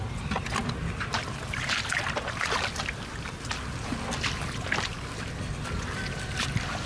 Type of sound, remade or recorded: recorded